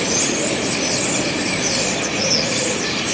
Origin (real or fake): real